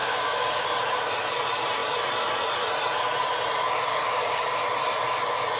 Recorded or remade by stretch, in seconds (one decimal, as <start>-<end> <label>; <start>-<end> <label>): 0.0-0.9 remade; 0.9-3.9 recorded; 3.9-4.6 remade; 4.6-5.6 recorded